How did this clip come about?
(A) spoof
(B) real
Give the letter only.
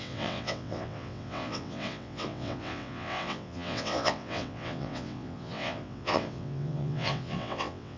A